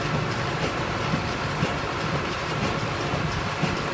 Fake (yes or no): yes